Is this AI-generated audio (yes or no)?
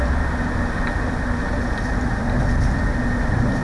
no